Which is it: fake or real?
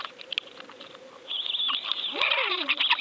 real